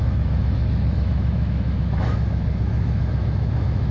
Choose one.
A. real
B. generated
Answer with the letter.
B